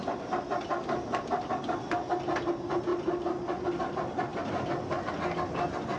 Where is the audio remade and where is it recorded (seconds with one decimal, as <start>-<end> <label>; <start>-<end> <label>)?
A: 0.0-6.0 recorded